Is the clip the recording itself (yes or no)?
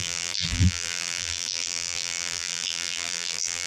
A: no